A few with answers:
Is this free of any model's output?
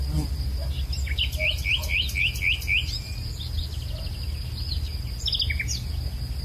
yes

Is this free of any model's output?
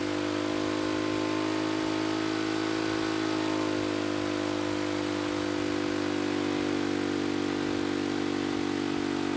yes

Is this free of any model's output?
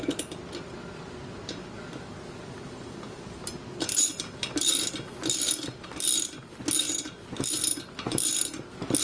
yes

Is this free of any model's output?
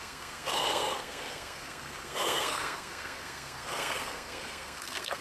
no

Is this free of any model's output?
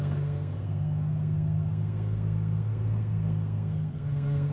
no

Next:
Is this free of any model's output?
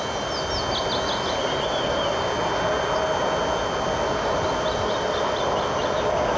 yes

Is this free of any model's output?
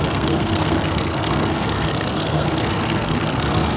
no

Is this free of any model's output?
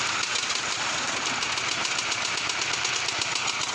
yes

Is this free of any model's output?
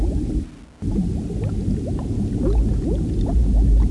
yes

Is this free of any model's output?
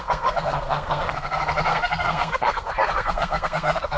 no